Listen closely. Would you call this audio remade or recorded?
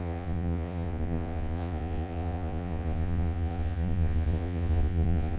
remade